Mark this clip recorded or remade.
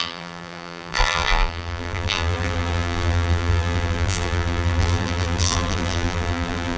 remade